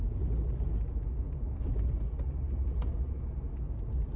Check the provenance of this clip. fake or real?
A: real